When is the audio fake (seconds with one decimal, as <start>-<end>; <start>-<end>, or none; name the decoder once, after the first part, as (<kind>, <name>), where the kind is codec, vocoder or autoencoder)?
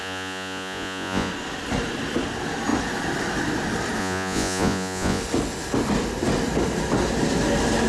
0.0-1.3 (vocoder, Vocos); 4.0-5.2